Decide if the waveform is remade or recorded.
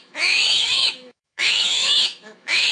remade